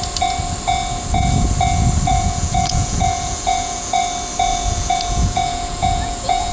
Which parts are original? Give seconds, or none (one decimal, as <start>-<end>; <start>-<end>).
0.0-2.1; 4.0-4.5